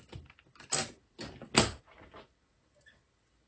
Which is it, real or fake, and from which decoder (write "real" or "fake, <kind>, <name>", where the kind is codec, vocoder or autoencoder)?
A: real